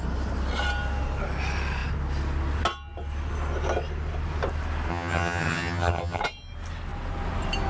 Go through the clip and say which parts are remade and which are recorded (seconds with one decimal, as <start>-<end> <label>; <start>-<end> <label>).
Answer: 0.0-4.9 recorded; 4.9-6.2 remade; 6.2-7.7 recorded